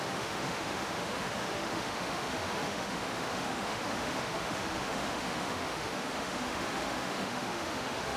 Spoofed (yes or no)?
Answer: yes